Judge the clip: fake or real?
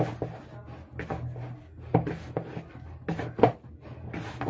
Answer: real